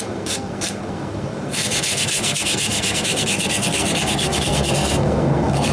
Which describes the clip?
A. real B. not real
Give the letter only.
B